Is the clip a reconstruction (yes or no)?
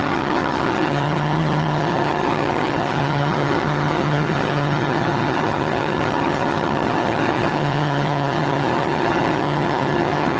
yes